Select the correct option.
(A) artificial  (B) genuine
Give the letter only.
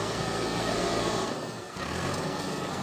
A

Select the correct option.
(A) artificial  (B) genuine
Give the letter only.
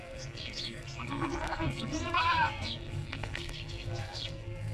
A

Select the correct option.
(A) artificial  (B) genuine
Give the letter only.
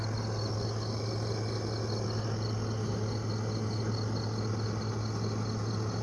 B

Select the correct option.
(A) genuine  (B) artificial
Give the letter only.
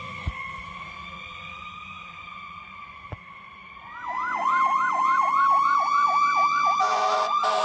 B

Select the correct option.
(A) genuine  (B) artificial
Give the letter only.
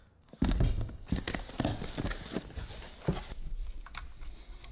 A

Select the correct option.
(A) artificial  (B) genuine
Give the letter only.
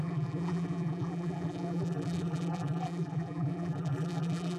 A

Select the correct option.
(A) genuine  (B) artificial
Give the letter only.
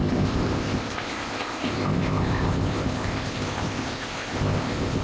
B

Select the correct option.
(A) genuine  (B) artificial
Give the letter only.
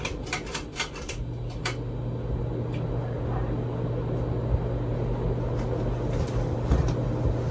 A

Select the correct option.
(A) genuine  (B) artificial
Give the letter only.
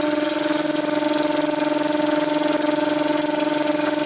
A